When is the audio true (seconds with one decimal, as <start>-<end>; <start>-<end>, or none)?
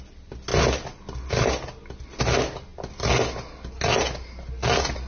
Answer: 0.0-5.1